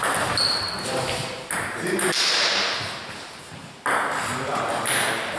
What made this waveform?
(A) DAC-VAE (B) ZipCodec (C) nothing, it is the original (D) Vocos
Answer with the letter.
C